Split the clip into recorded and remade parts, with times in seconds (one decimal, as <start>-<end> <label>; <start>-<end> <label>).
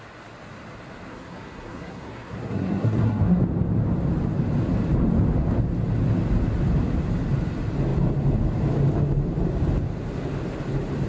0.0-1.1 recorded; 1.1-3.4 remade; 3.4-11.1 recorded